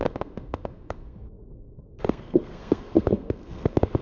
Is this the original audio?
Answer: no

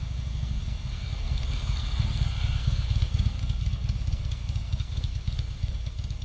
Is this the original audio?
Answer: no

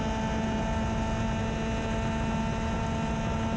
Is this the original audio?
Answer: yes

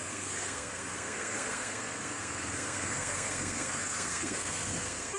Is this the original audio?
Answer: no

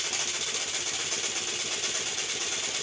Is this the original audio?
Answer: yes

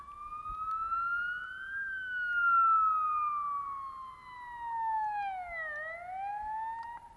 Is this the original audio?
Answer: yes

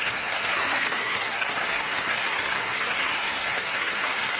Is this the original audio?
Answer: no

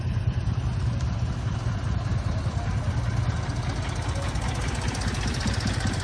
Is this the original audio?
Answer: yes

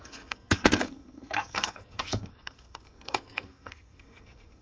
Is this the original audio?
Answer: no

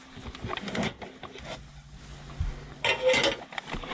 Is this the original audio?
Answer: yes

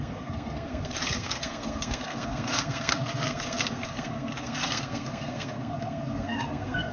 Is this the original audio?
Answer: no